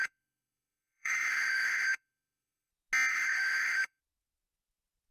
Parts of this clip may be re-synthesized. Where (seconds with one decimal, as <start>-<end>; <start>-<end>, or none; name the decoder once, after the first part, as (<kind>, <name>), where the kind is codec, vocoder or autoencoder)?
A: 0.0-2.7 (autoencoder, DAC-VAE); 3.1-4.0